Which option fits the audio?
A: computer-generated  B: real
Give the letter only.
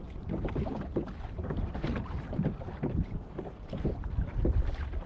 A